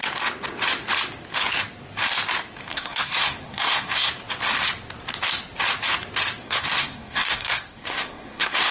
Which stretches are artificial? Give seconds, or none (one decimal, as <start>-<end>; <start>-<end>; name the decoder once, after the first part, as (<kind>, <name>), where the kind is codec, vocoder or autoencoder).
2.7-4.1 (codec, SNAC); 6.4-8.7